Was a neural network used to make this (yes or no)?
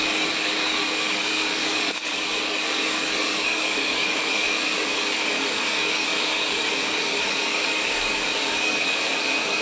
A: yes